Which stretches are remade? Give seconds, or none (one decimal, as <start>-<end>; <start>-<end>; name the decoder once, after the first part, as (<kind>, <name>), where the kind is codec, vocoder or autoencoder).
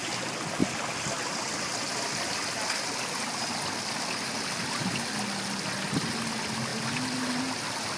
none